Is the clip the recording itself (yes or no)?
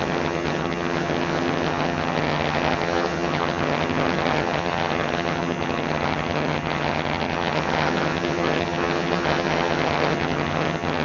no